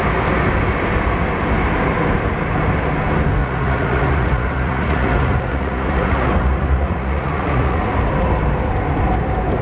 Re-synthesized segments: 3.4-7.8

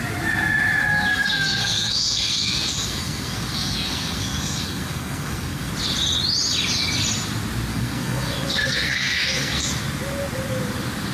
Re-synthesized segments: 1.1-5.7; 7.7-9.8

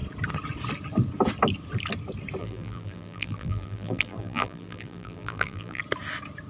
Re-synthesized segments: 2.4-5.8

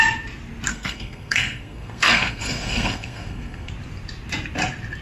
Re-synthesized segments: 0.7-3.7

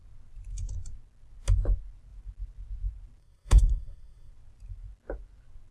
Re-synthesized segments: 3.2-4.3